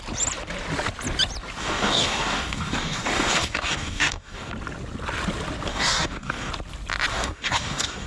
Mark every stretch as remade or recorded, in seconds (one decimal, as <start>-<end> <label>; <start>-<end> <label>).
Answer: 0.0-1.6 recorded; 1.6-4.5 remade; 4.5-5.7 recorded; 5.7-6.5 remade; 6.5-7.1 recorded; 7.1-8.1 remade